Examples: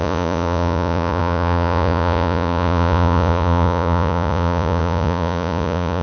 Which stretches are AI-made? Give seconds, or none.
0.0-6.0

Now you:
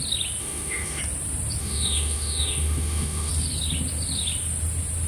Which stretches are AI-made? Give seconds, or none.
0.4-1.0; 1.6-3.3